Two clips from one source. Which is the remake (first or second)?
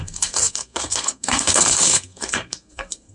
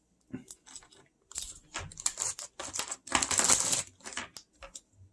first